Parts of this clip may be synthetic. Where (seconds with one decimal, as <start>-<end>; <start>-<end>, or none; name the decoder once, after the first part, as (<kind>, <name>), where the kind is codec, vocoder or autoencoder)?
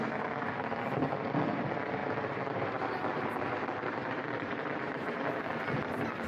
2.0-5.4 (vocoder, BigVGAN v2)